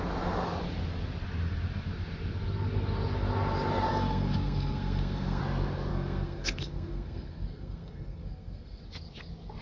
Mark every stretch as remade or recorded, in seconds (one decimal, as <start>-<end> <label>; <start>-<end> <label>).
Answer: 0.0-3.9 recorded; 3.9-5.4 remade; 5.4-5.9 recorded; 5.9-8.8 remade; 8.8-9.6 recorded